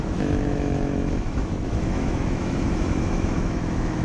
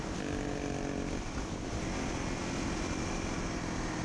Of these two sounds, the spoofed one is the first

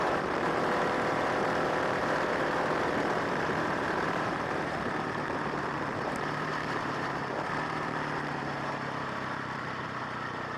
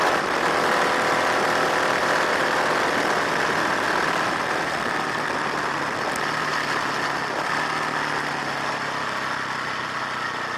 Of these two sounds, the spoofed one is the first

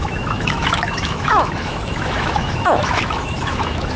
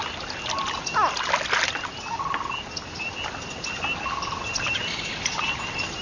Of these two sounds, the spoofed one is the first